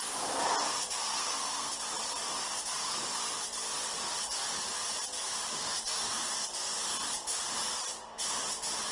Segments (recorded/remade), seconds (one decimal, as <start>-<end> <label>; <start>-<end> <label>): 0.0-1.1 recorded; 1.1-1.7 remade; 1.7-8.9 recorded

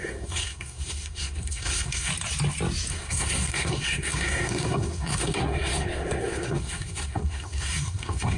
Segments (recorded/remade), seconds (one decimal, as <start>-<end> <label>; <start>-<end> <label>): 0.0-2.1 remade; 2.1-2.9 recorded; 2.9-8.4 remade

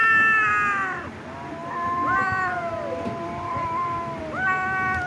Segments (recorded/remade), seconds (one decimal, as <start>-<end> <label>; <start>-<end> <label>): 0.0-5.1 recorded

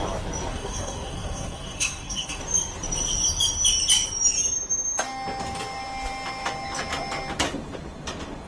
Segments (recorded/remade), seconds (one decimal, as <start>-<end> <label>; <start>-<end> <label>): 0.0-0.5 recorded; 0.5-2.4 remade; 2.4-8.5 recorded

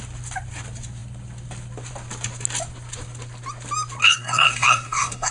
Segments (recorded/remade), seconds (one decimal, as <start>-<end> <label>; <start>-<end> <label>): 0.0-4.0 recorded; 4.0-5.3 remade

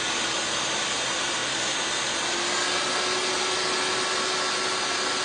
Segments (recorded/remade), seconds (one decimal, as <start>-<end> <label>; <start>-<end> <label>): 0.0-5.2 recorded

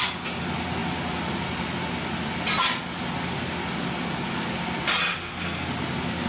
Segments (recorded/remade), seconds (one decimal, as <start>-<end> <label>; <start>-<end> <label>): 0.0-5.1 recorded; 5.1-5.7 remade; 5.7-6.3 recorded